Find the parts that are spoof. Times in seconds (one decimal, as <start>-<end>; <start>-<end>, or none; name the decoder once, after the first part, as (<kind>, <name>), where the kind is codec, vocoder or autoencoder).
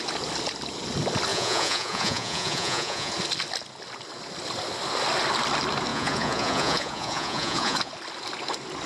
1.3-3.1 (vocoder, Vocos); 5.9-7.9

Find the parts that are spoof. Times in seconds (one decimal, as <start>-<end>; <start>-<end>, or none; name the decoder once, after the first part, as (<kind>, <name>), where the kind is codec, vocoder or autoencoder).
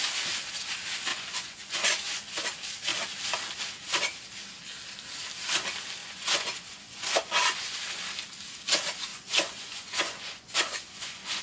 1.1-2.4 (vocoder, Vocos); 6.0-7.8; 9.1-11.4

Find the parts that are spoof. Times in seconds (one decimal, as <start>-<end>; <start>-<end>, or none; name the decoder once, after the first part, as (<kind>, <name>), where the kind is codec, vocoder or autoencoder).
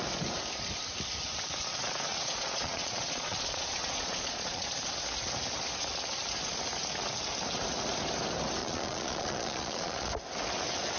2.1-4.7 (vocoder, Vocos); 8.6-10.1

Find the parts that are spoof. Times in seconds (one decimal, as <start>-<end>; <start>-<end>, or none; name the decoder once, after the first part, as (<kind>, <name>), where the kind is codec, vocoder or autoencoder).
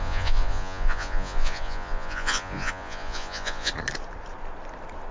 0.0-3.7 (vocoder, Vocos)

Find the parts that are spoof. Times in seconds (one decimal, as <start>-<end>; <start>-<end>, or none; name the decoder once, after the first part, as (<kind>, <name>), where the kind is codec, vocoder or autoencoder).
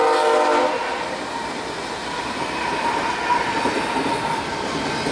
none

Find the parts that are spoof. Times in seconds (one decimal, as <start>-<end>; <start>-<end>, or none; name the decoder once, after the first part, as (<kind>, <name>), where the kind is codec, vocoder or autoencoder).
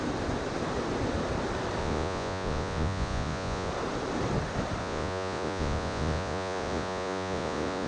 1.8-3.7 (vocoder, Vocos); 4.8-7.9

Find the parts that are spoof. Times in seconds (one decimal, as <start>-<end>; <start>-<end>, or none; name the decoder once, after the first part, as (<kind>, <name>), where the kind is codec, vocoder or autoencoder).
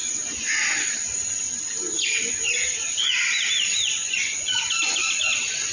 4.0-4.7 (vocoder, Vocos)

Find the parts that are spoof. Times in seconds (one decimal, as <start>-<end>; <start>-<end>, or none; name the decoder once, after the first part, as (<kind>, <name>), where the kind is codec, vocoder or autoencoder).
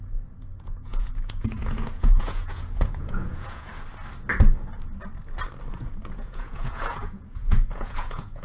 0.0-3.7 (vocoder, Vocos); 5.7-8.4